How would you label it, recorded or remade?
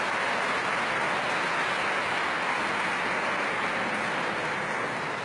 recorded